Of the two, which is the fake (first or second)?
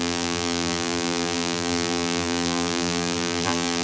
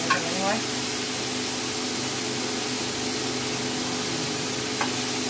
first